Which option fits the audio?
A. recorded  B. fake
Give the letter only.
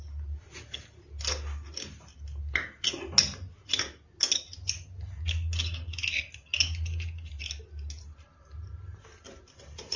A